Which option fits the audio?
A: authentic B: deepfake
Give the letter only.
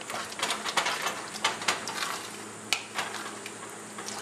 A